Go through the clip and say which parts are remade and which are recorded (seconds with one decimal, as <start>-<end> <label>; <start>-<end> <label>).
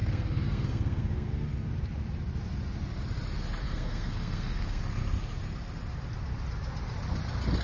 0.0-1.7 remade; 1.7-3.6 recorded; 3.6-4.8 remade; 4.8-7.6 recorded